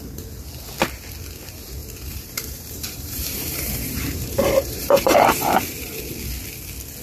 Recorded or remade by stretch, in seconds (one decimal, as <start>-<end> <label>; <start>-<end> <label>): 0.0-1.8 recorded; 1.8-6.0 remade; 6.0-7.0 recorded